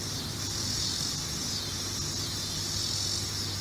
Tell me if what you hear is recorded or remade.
recorded